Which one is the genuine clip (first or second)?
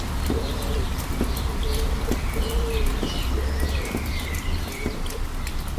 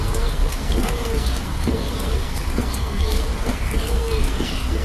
first